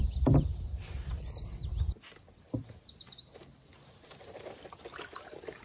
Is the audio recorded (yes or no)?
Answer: yes